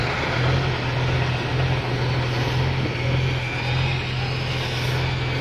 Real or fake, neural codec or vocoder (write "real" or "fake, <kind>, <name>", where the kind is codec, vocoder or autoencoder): real